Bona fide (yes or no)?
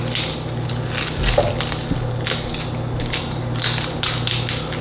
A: yes